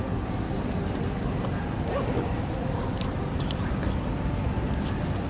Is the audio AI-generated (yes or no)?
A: yes